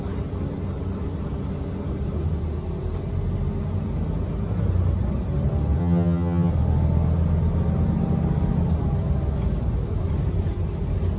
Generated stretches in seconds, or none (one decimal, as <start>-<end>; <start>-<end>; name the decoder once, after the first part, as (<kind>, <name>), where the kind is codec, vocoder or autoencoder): 5.8-6.5 (vocoder, HiFi-GAN)